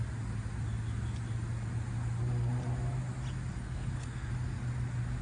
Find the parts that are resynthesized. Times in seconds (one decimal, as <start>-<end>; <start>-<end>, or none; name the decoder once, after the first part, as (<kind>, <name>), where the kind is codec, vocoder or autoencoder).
3.5-4.3 (codec, SNAC)